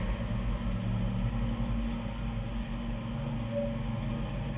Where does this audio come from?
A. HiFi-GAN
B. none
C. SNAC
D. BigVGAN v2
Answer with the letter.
B